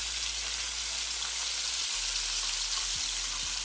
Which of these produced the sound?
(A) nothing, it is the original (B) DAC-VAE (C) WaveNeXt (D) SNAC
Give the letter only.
A